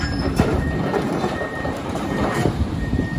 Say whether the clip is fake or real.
fake